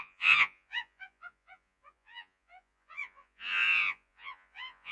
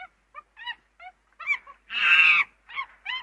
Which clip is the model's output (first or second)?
first